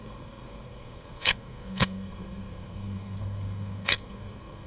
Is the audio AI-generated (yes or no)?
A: yes